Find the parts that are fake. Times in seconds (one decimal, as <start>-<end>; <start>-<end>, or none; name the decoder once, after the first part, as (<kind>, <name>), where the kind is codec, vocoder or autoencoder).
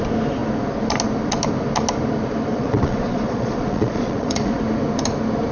2.5-4.6 (vocoder, Vocos)